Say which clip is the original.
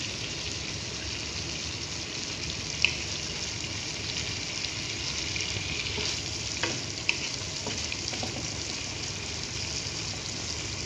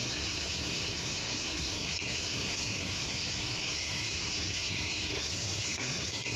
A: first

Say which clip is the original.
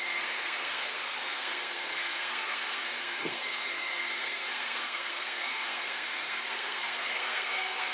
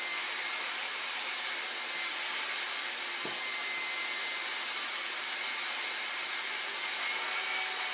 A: second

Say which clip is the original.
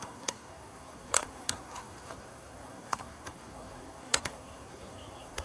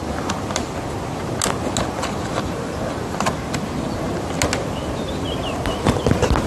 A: second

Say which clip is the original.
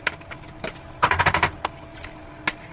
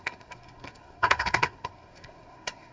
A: first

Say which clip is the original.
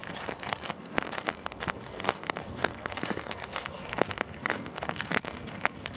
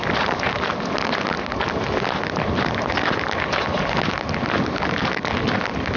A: second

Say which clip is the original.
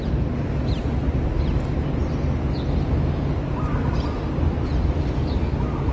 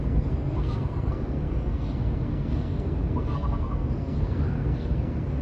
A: first